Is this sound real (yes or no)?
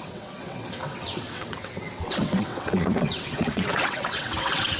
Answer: no